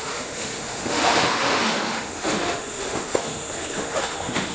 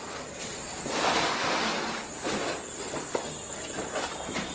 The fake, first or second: first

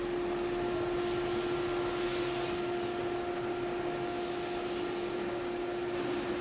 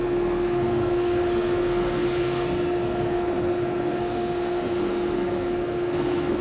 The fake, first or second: second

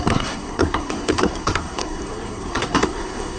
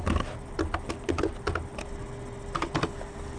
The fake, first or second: first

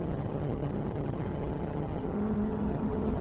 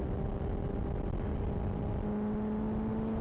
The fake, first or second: first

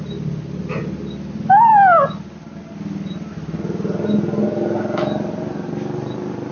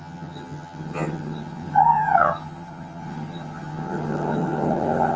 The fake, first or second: second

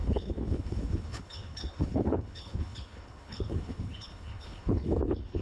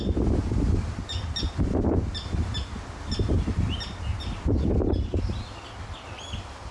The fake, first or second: first